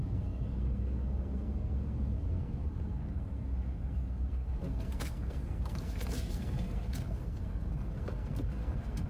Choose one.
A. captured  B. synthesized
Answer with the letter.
B